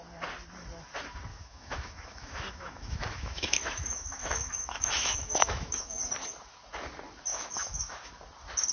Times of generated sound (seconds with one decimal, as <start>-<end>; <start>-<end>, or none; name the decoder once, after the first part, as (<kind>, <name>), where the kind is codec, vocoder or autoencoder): 1.3-6.0 (autoencoder, DAC-VAE); 7.3-8.1